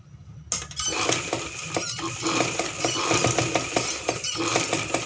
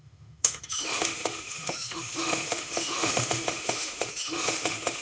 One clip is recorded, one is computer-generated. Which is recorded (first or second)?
first